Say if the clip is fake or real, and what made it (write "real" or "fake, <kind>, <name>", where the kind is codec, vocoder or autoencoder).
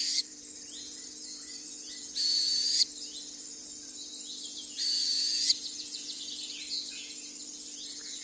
fake, vocoder, Vocos